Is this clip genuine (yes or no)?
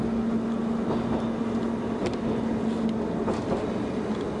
yes